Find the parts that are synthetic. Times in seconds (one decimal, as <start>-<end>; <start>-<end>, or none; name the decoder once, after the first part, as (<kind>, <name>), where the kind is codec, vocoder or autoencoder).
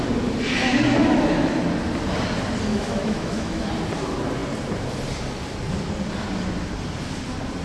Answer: 0.7-1.5 (autoencoder, DAC-VAE); 2.7-3.7